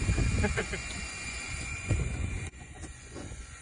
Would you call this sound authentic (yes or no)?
no